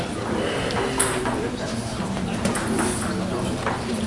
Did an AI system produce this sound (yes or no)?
no